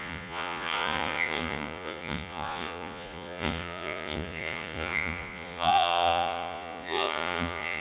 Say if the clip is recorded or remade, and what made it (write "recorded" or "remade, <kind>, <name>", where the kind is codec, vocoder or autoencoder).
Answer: remade, vocoder, Vocos